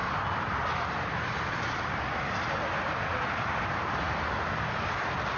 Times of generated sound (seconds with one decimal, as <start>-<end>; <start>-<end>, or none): none